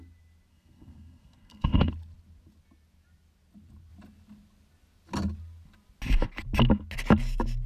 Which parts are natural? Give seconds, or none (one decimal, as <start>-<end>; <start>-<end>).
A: 0.0-0.5; 1.9-7.7